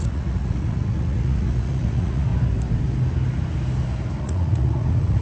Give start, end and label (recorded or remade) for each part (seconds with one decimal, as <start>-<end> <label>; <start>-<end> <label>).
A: 0.0-2.3 remade; 2.3-4.2 recorded; 4.2-5.2 remade

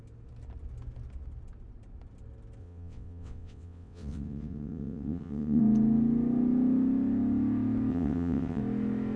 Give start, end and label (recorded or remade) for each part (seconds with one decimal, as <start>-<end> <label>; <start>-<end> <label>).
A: 0.0-2.6 recorded; 2.6-5.6 remade; 5.6-7.9 recorded; 7.9-8.6 remade; 8.6-9.2 recorded

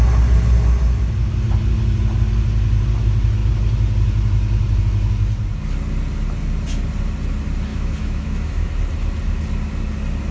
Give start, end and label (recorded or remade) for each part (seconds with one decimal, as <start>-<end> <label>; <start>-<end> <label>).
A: 0.0-7.7 recorded; 7.7-8.7 remade; 8.7-10.3 recorded

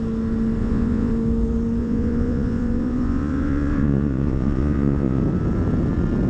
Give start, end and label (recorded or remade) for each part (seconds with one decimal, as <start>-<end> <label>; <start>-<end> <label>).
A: 0.0-0.6 recorded; 0.6-1.1 remade; 1.1-1.8 recorded; 1.8-5.2 remade; 5.2-6.3 recorded

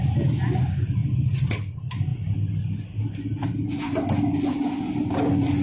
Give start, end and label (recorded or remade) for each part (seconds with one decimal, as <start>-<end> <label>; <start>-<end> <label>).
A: 0.0-5.6 recorded

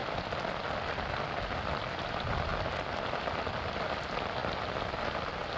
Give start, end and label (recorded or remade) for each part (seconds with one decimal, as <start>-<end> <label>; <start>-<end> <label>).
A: 0.0-5.6 recorded